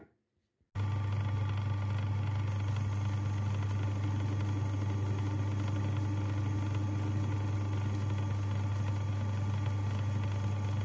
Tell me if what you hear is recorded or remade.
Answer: recorded